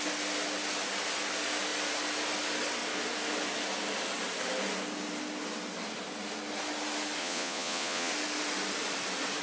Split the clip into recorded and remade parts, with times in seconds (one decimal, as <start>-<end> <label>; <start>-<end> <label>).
0.0-7.2 recorded; 7.2-8.1 remade; 8.1-9.4 recorded